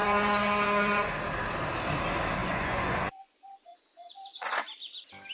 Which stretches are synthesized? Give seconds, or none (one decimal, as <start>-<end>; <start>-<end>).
0.0-1.1; 2.4-4.6

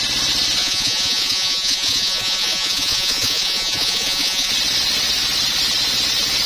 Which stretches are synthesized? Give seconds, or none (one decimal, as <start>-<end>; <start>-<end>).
0.6-4.5

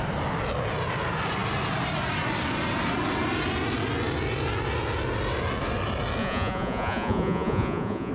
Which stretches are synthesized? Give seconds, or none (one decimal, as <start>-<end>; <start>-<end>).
6.2-8.1

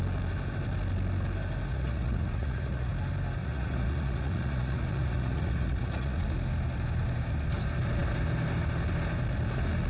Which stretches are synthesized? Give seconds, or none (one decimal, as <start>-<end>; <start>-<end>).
1.7-2.9; 3.4-6.2